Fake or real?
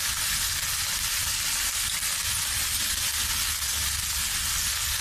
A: real